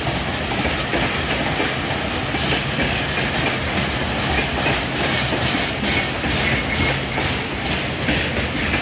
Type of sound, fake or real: real